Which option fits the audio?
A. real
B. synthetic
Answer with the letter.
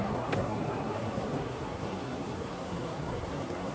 B